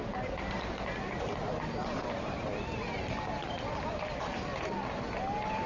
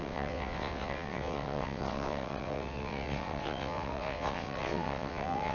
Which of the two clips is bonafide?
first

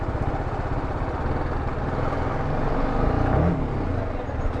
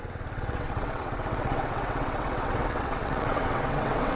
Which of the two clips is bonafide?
first